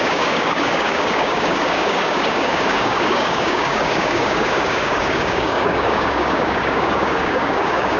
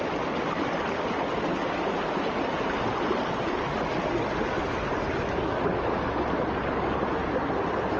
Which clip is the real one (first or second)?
second